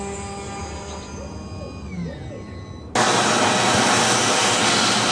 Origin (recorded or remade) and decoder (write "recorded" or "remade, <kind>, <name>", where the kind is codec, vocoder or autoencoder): recorded